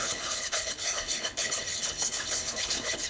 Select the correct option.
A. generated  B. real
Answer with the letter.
A